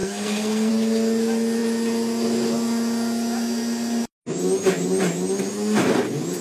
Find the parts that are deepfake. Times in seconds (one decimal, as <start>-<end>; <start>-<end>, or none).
0.0-0.7